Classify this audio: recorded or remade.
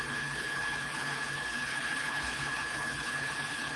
remade